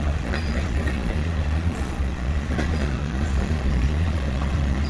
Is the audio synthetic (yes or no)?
yes